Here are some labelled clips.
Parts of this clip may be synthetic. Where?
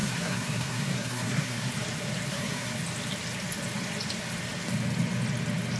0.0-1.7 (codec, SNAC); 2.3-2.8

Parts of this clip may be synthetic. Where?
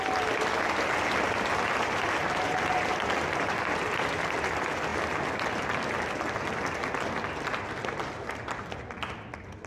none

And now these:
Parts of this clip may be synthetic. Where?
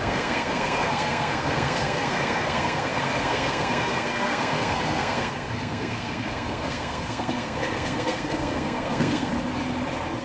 0.0-9.3 (codec, SNAC)